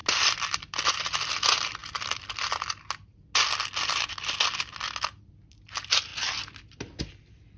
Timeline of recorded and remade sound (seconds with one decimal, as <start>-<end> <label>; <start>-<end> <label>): 0.0-0.9 remade; 0.9-1.8 recorded; 1.8-2.9 remade; 2.9-7.6 recorded